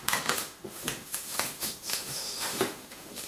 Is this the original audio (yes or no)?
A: no